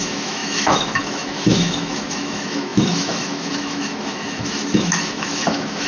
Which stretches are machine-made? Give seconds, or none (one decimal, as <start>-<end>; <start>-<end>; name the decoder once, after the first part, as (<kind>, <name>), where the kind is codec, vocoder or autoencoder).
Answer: 0.0-5.9 (autoencoder, DAC-VAE)